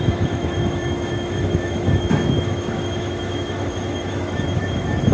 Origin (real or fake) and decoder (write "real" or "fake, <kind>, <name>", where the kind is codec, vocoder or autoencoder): fake, autoencoder, DAC-VAE